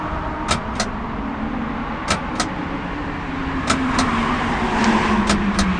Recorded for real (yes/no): yes